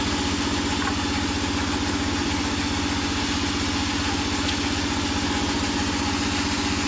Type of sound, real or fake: real